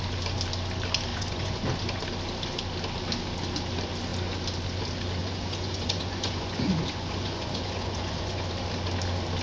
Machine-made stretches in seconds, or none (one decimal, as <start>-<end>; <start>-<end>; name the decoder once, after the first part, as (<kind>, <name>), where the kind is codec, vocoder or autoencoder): 1.1-1.6 (vocoder, Vocos); 5.2-8.5